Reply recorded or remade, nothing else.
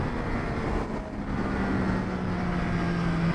recorded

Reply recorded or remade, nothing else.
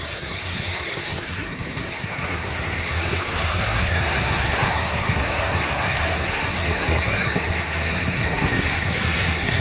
remade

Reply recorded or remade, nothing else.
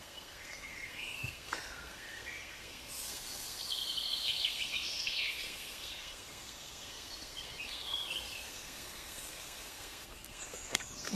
remade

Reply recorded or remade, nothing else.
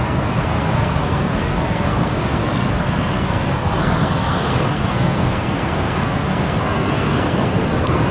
remade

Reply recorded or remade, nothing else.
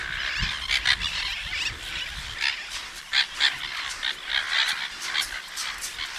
recorded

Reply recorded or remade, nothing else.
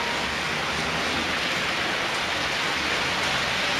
recorded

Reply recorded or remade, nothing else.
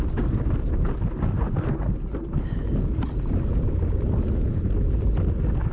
recorded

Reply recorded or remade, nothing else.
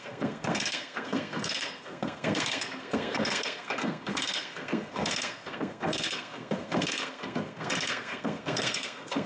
remade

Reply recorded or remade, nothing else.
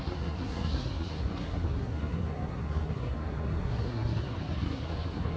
remade